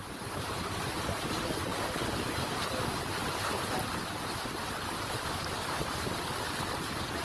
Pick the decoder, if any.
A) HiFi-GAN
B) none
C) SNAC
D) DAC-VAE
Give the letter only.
B